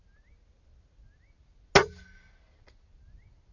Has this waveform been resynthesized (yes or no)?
no